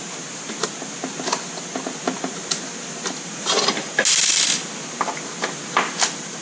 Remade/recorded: recorded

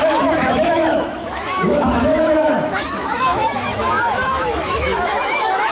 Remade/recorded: remade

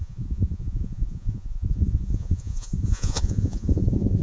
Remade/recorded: remade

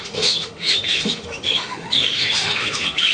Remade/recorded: remade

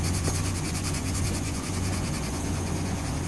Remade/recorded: remade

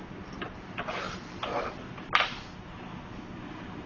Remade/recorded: recorded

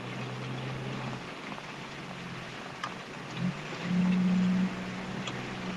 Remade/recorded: recorded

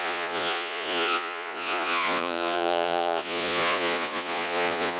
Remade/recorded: remade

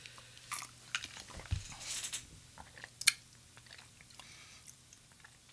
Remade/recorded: recorded